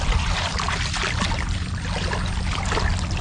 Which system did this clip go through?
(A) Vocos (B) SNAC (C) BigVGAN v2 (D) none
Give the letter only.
D